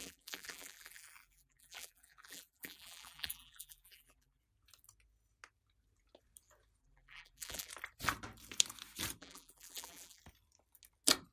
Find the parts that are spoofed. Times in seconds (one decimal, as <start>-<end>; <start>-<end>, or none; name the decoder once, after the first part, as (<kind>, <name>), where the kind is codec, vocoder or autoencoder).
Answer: 0.0-4.4 (vocoder, BigVGAN v2); 6.8-7.7; 9.2-10.2